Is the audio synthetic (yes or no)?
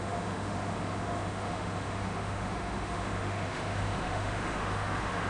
yes